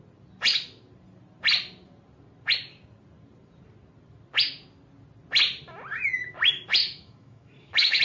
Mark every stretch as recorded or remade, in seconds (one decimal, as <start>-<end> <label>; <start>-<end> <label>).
0.0-6.8 recorded; 6.8-8.0 remade

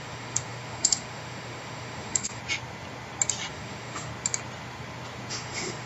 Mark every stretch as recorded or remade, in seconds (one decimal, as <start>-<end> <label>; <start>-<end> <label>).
0.0-2.4 remade; 2.4-3.5 recorded; 3.5-4.1 remade; 4.1-5.3 recorded; 5.3-5.9 remade

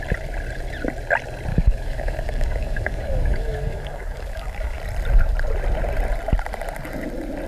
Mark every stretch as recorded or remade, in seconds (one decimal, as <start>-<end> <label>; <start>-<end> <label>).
0.0-1.5 recorded; 1.5-4.8 remade; 4.8-7.5 recorded